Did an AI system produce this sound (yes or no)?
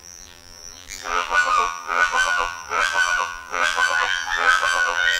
yes